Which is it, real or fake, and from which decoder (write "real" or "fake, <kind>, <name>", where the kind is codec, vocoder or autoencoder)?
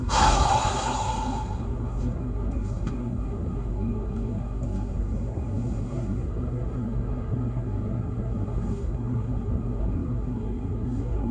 fake, codec, SNAC